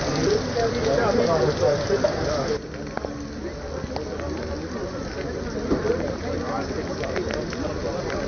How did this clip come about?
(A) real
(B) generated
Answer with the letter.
A